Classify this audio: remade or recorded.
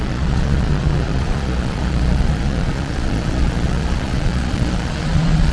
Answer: remade